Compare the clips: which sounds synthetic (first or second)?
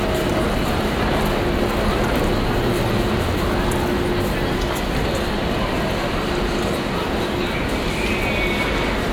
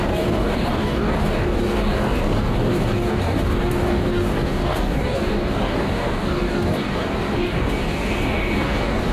second